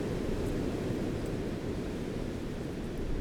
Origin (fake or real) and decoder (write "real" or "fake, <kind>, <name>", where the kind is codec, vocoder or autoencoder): fake, vocoder, BigVGAN v2